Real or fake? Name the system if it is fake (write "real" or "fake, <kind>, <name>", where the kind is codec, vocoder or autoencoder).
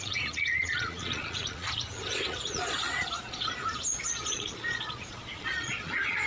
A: fake, vocoder, Vocos